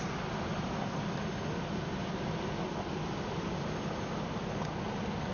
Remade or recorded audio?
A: recorded